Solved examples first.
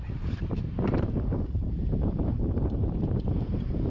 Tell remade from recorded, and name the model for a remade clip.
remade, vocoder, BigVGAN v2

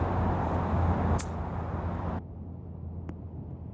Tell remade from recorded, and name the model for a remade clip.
recorded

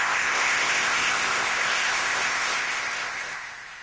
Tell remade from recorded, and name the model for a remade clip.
remade, codec, ZipCodec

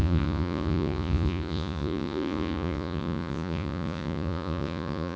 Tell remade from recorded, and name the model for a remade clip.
remade, vocoder, Vocos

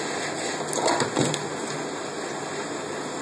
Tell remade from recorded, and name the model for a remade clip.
recorded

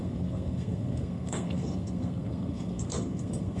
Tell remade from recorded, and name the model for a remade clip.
remade, codec, SNAC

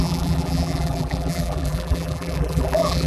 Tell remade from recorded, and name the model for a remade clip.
remade, vocoder, BigVGAN v2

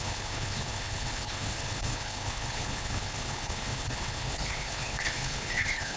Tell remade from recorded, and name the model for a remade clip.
remade, codec, HILCodec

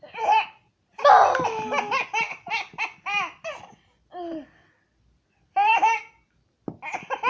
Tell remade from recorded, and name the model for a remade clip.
recorded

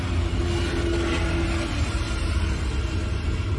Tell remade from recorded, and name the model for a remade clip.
recorded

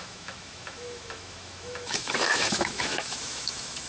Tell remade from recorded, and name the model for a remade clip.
remade, autoencoder, DAC-VAE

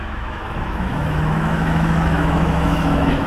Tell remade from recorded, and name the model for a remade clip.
remade, autoencoder, DAC-VAE